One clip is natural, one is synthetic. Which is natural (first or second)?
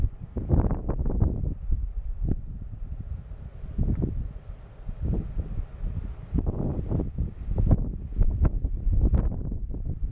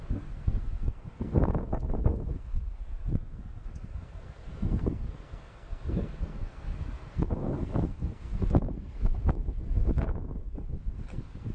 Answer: first